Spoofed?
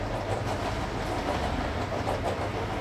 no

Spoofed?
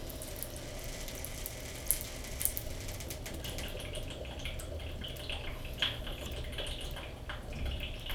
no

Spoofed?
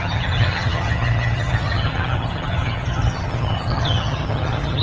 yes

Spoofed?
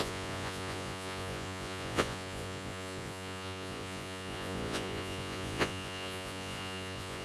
yes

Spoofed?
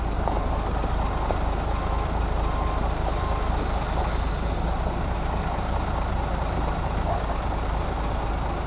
no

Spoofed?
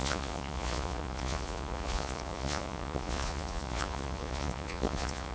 yes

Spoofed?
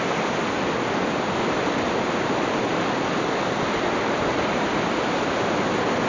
no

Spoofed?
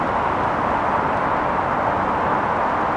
no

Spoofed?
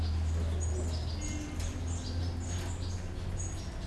no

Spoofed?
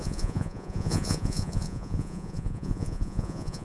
yes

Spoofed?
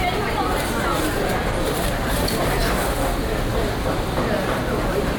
no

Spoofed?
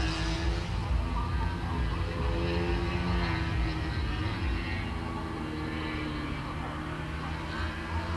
no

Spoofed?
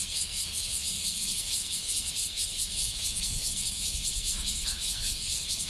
yes